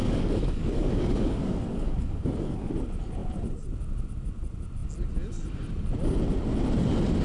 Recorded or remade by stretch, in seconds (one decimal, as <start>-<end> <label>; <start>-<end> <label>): 0.0-2.7 remade; 2.7-7.2 recorded